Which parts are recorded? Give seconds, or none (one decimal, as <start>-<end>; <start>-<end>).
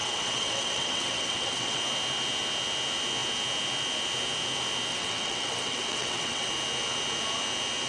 1.8-4.9; 6.5-7.9